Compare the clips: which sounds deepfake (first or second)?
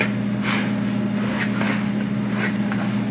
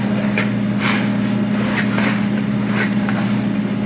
second